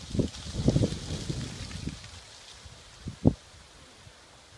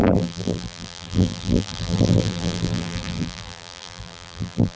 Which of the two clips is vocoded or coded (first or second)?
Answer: second